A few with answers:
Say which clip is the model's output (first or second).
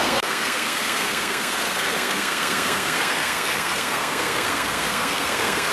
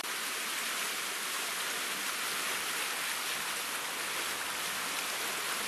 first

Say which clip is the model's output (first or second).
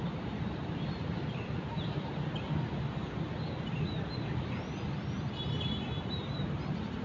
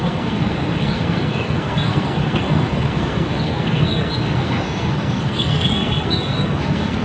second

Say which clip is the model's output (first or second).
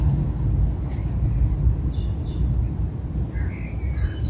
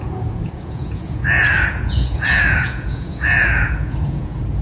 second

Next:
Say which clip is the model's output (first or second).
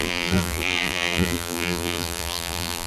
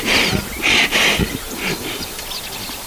first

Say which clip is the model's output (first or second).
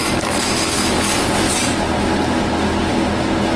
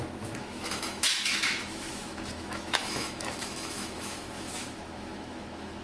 second